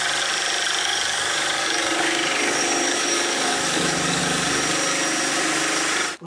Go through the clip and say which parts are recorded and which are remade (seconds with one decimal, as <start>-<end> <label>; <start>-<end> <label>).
0.0-0.8 recorded; 0.8-4.2 remade; 4.2-6.3 recorded

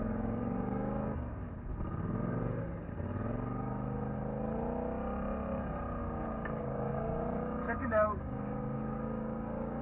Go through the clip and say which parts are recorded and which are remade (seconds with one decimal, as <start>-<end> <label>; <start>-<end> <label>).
0.0-1.7 remade; 1.7-6.0 recorded; 6.0-9.8 remade

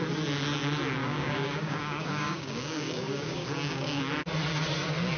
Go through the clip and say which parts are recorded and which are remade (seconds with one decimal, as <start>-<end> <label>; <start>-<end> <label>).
0.0-1.0 recorded; 1.0-4.0 remade; 4.0-5.2 recorded

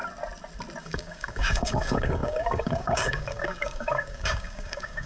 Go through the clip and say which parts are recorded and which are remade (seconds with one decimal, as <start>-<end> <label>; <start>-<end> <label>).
0.0-0.8 recorded; 0.8-5.1 remade

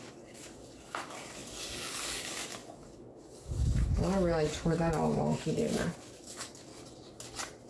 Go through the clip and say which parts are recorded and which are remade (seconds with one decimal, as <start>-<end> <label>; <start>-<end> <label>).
0.0-6.7 remade; 6.7-7.7 recorded

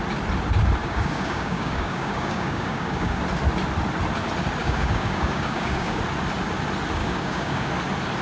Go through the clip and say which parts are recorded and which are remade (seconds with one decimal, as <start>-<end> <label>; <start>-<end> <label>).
0.0-0.8 recorded; 0.8-3.2 remade; 3.2-4.6 recorded; 4.6-6.0 remade; 6.0-7.0 recorded; 7.0-7.7 remade; 7.7-8.2 recorded

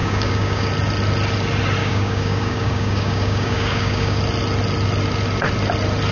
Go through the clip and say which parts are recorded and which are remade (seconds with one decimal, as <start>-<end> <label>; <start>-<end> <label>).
0.0-0.7 remade; 0.7-1.8 recorded; 1.8-4.2 remade; 4.2-6.1 recorded

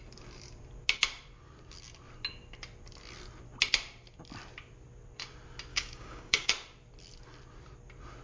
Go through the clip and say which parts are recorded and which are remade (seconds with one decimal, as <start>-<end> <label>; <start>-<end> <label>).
0.0-5.7 recorded; 5.7-6.5 remade; 6.5-8.2 recorded